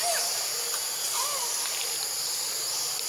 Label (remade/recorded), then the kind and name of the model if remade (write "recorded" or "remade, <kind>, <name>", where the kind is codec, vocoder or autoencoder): recorded